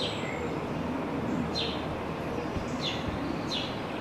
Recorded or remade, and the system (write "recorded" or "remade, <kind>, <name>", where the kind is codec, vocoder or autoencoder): recorded